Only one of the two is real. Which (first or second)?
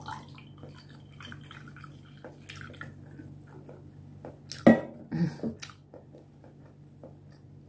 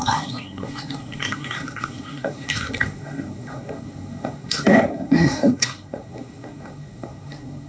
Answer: first